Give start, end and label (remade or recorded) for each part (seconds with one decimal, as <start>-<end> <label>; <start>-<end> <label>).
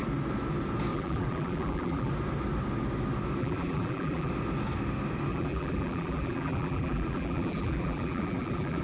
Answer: 0.0-0.9 recorded; 0.9-2.1 remade; 2.1-3.4 recorded; 3.4-4.3 remade; 4.3-5.3 recorded; 5.3-8.8 remade